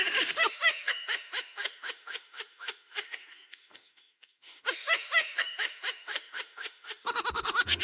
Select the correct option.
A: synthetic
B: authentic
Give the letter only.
A